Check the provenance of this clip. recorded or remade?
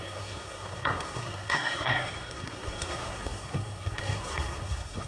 remade